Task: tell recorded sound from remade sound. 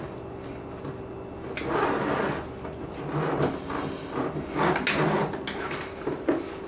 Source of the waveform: recorded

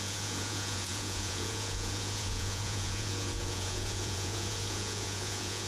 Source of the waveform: remade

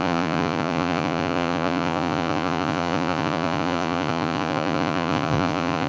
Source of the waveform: remade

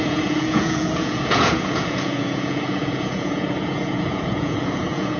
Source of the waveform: remade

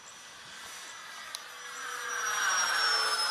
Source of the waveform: recorded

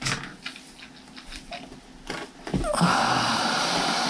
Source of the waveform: recorded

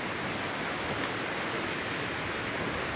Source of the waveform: recorded